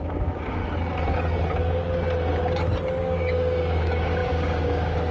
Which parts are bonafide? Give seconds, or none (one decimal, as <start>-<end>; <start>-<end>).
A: 0.6-3.0